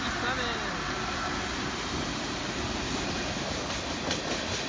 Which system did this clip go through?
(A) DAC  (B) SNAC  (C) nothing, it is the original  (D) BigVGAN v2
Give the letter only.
C